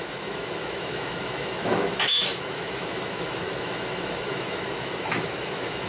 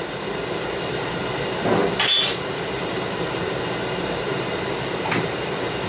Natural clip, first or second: second